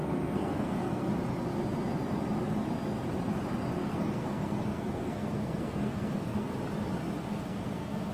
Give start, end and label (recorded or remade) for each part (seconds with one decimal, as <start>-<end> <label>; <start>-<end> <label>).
0.0-1.1 remade; 1.1-3.8 recorded; 3.8-6.5 remade; 6.5-7.3 recorded; 7.3-8.1 remade